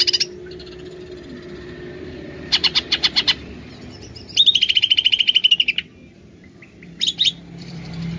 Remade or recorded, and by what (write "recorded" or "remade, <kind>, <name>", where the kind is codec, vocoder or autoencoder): recorded